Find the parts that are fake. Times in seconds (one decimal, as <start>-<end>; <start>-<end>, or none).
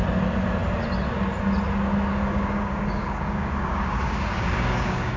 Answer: 2.1-5.2